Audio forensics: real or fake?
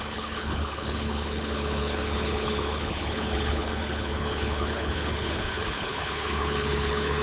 fake